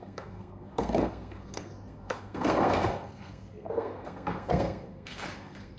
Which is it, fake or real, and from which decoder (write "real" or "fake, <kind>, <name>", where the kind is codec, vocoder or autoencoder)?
fake, codec, SNAC